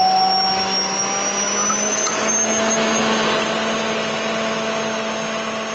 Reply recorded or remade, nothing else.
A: recorded